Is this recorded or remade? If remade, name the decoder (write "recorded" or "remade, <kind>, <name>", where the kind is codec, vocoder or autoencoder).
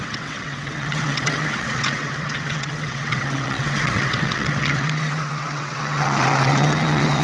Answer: remade, vocoder, WaveNeXt